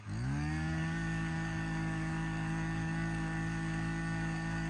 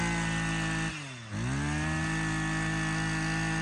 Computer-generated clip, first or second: first